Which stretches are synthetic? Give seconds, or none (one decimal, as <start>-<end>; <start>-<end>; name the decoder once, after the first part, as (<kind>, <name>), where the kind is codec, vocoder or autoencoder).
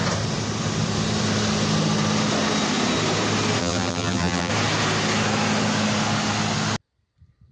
3.6-4.5 (vocoder, BigVGAN v2)